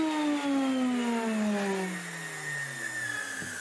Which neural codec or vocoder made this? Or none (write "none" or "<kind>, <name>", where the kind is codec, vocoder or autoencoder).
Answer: none